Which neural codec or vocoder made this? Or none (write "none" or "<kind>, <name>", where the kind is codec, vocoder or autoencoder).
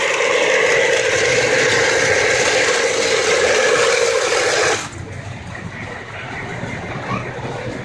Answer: none